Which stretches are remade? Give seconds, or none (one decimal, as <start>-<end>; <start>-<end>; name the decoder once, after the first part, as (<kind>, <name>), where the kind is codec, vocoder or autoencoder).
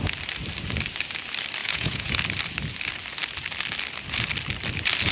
1.6-2.2 (vocoder, Vocos)